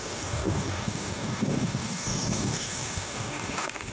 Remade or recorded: remade